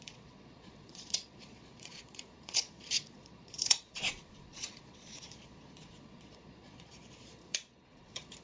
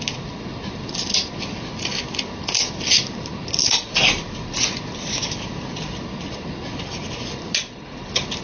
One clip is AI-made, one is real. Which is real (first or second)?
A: second